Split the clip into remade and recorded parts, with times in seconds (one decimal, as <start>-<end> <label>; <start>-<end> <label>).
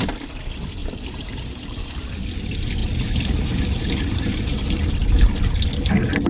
0.0-0.8 recorded; 0.8-2.1 remade; 2.1-2.8 recorded; 2.8-4.9 remade; 4.9-6.3 recorded